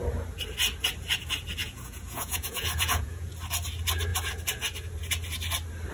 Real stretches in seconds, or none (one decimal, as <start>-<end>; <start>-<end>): 0.0-1.6; 3.3-5.9